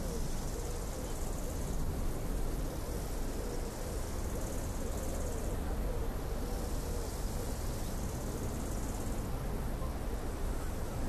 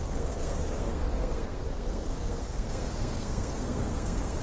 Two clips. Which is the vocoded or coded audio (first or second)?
second